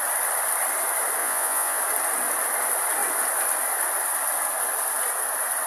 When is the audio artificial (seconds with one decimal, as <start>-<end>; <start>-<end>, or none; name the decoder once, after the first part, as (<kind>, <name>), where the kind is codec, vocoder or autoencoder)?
1.2-1.8 (vocoder, Vocos)